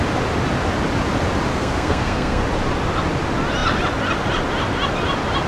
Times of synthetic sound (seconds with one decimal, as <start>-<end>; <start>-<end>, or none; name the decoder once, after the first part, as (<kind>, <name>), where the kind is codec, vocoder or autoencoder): 1.5-2.4 (codec, SNAC)